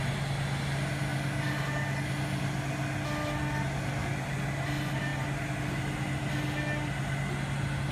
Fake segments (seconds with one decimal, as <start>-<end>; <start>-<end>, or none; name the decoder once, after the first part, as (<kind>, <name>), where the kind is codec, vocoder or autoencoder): none